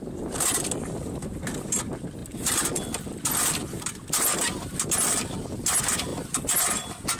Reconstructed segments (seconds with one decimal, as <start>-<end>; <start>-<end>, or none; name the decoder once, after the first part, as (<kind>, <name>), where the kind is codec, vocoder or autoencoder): none